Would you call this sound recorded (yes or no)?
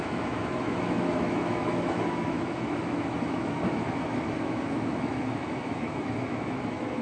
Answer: no